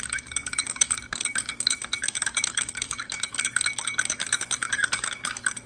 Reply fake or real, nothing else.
fake